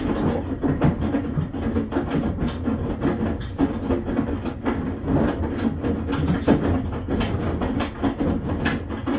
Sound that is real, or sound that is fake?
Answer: real